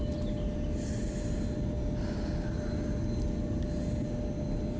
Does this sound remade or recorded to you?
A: recorded